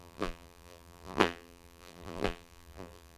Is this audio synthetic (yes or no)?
yes